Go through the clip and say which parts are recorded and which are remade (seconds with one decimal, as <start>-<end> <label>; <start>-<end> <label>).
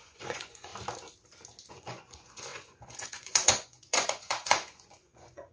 0.0-0.7 remade; 0.7-1.7 recorded; 1.7-5.5 remade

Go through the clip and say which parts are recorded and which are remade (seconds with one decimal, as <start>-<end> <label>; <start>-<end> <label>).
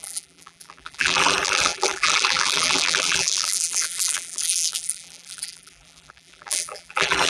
0.0-7.3 remade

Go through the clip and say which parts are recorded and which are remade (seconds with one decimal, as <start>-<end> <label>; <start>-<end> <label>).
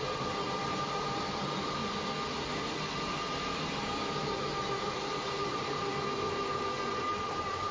0.0-1.8 remade; 1.8-4.2 recorded; 4.2-5.9 remade; 5.9-7.2 recorded; 7.2-7.7 remade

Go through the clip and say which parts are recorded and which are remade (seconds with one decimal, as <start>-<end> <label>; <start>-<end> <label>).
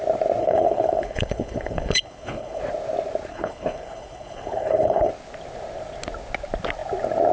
0.0-0.4 recorded; 0.4-2.6 remade; 2.6-3.3 recorded; 3.3-5.1 remade; 5.1-7.3 recorded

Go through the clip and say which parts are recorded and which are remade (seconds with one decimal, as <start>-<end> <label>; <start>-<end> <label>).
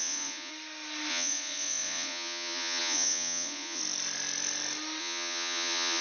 0.0-0.5 remade; 0.5-1.1 recorded; 1.1-3.8 remade; 3.8-5.0 recorded; 5.0-6.0 remade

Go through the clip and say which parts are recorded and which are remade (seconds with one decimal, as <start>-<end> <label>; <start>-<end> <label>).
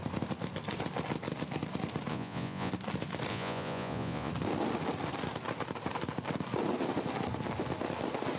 0.0-2.1 recorded; 2.1-2.7 remade; 2.7-3.3 recorded; 3.3-4.3 remade; 4.3-8.4 recorded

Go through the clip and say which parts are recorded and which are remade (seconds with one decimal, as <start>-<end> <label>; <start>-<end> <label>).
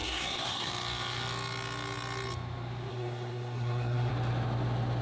0.0-0.7 remade; 0.7-2.9 recorded; 2.9-4.1 remade; 4.1-5.0 recorded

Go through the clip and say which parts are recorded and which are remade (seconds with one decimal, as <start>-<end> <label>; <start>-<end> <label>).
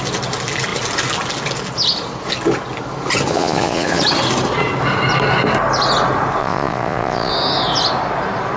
0.0-3.3 recorded; 3.3-4.0 remade; 4.0-6.4 recorded; 6.4-7.3 remade; 7.3-8.6 recorded